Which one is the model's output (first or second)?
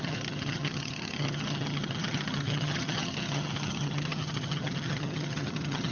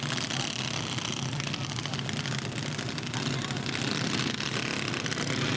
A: first